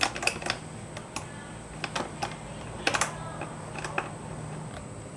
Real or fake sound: real